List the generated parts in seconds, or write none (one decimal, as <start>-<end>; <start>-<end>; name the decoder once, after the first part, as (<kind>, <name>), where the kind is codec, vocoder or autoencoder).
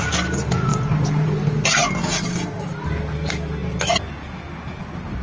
none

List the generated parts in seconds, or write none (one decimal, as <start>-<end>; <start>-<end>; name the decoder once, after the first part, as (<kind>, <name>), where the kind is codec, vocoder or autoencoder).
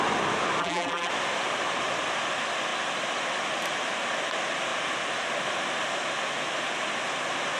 0.6-1.1 (vocoder, BigVGAN v2)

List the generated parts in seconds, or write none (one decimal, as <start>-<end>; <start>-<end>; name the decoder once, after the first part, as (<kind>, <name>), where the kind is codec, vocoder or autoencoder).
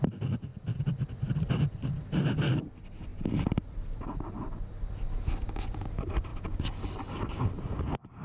3.1-4.3 (vocoder, BigVGAN v2)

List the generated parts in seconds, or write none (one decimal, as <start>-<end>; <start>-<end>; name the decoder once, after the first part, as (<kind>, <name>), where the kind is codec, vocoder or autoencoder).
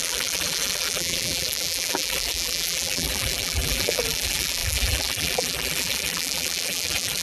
0.0-7.2 (vocoder, BigVGAN v2)